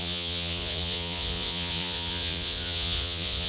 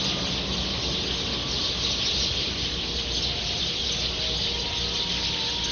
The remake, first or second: first